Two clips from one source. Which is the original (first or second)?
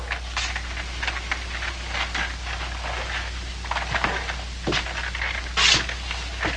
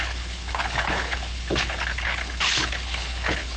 first